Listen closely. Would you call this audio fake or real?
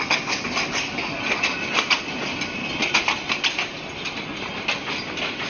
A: real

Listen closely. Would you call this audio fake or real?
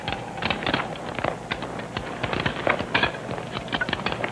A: real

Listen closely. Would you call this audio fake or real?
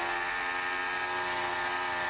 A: real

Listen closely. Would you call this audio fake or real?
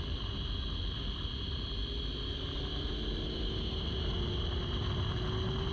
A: real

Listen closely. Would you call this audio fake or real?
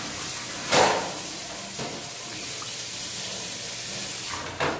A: real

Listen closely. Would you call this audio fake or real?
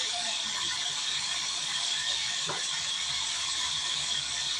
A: fake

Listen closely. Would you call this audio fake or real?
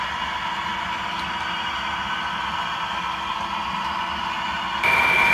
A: real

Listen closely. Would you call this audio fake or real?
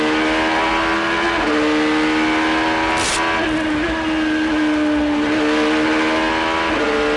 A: real